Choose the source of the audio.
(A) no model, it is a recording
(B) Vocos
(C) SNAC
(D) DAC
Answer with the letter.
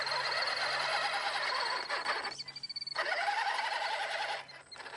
A